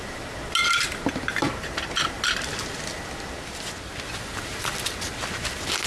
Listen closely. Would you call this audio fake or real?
real